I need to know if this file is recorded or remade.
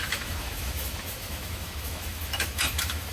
remade